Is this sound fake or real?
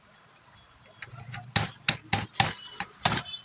real